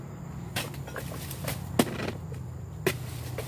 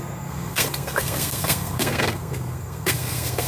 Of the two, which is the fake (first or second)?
second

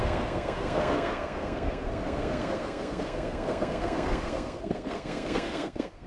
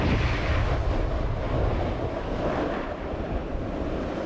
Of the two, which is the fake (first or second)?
first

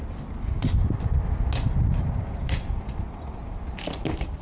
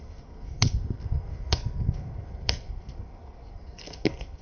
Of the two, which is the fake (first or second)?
second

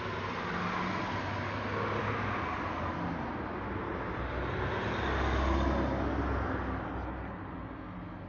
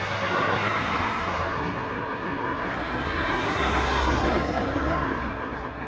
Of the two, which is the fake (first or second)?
second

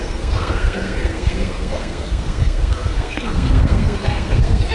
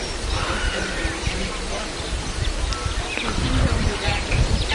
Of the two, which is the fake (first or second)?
first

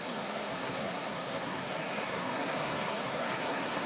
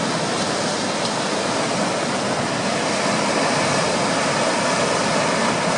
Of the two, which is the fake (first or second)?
first